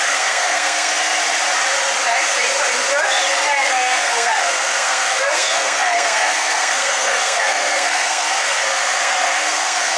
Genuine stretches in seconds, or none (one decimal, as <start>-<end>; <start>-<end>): 0.9-3.7